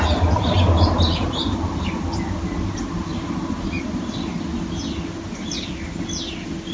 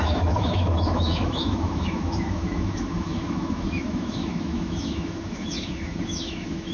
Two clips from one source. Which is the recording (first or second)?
first